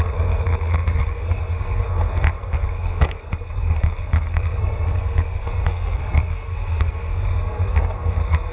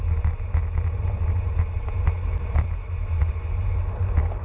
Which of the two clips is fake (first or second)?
first